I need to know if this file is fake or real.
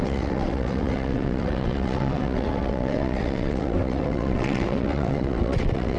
fake